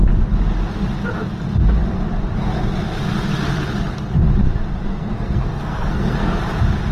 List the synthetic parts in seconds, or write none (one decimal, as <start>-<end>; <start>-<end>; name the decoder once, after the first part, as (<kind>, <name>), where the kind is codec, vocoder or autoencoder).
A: 4.9-6.4 (codec, SNAC)